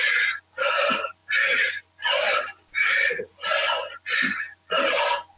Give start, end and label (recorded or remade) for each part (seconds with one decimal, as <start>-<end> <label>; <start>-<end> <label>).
0.0-5.4 recorded